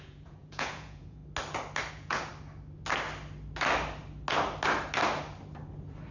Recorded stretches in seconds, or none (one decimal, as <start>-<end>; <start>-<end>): 1.2-1.9; 2.3-6.1